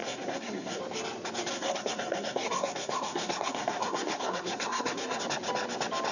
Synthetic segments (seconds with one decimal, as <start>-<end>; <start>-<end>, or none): 0.0-0.8; 1.5-5.2